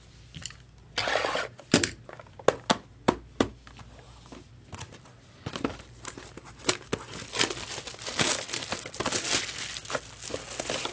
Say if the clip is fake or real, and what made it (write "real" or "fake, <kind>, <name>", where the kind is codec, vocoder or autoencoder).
real